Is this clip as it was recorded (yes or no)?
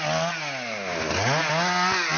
yes